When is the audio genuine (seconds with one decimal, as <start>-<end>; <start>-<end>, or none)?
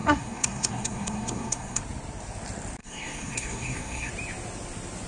1.8-2.8; 4.1-5.1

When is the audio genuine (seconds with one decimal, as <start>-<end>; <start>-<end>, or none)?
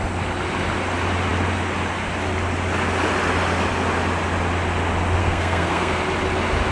0.0-5.2; 6.0-6.7